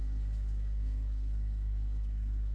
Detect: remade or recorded remade